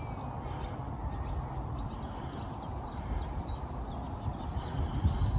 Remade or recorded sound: recorded